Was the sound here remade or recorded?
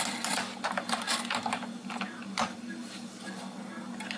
recorded